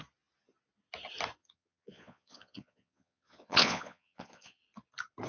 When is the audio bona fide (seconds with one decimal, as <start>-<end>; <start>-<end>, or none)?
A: 0.0-1.4; 4.6-5.3